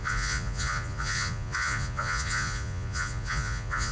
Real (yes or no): no